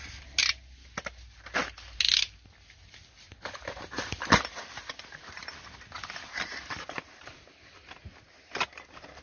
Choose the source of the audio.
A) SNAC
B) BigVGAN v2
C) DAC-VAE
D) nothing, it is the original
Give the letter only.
D